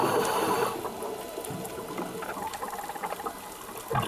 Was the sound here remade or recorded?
recorded